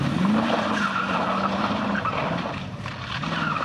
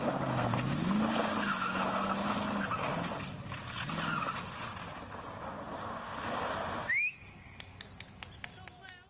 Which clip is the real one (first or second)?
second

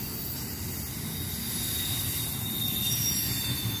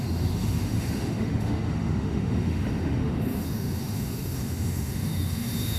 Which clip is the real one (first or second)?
first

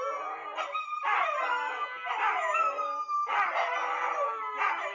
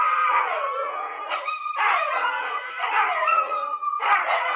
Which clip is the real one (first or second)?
first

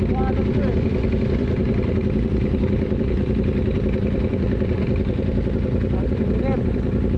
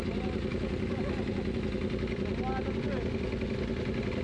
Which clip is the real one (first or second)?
second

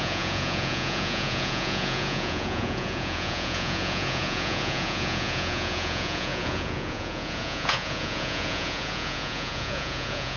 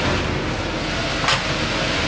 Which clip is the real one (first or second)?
second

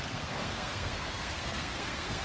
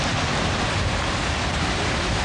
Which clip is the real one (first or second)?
second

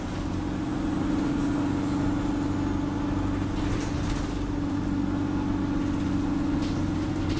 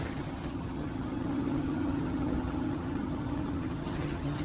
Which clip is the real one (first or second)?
first